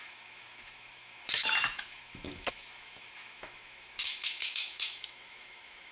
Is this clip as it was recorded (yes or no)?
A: no